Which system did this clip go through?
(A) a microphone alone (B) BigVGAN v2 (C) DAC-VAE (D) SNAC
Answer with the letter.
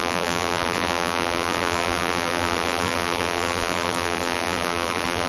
B